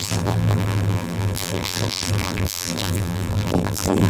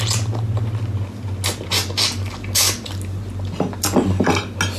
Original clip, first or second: second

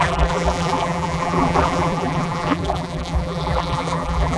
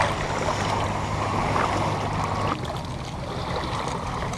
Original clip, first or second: second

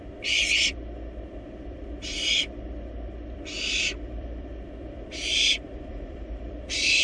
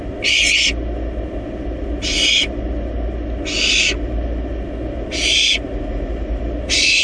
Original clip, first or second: second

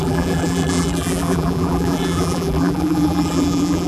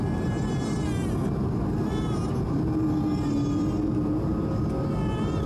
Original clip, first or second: second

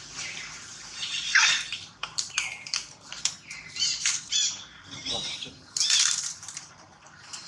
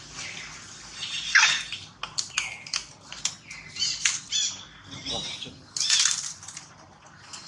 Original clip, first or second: second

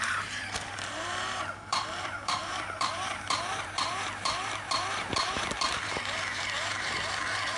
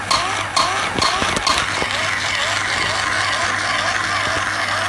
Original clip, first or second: second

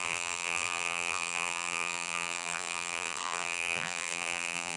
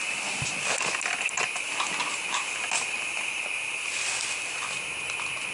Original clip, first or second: second